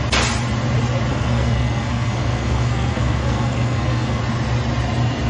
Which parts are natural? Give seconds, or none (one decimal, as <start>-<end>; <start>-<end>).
0.0-1.1; 4.2-5.3